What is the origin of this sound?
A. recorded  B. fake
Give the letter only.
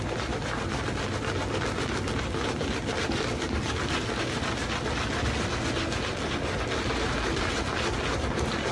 A